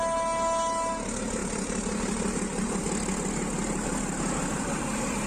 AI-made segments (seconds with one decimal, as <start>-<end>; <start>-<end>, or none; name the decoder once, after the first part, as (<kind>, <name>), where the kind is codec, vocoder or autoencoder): 1.4-4.6 (vocoder, BigVGAN v2)